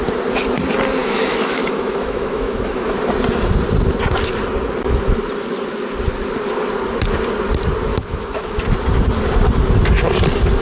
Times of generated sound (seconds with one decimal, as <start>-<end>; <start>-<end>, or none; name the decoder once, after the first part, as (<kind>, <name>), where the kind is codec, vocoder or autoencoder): 1.0-2.9 (autoencoder, DAC-VAE); 7.9-8.6